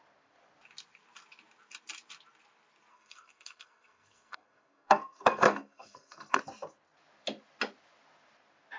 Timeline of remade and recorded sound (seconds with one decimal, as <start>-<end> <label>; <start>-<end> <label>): 0.0-2.9 recorded; 2.9-6.4 remade; 6.4-8.8 recorded